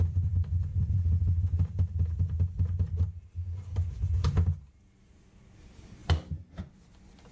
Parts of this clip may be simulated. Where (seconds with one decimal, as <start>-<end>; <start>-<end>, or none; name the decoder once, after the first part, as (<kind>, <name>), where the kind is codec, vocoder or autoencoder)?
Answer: 0.0-0.7 (vocoder, BigVGAN v2); 5.1-6.0; 6.7-7.3